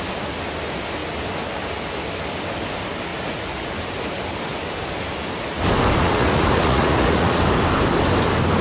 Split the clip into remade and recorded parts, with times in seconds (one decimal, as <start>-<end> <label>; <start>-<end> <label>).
0.0-3.1 recorded; 3.1-3.7 remade; 3.7-6.0 recorded; 6.0-7.4 remade; 7.4-8.6 recorded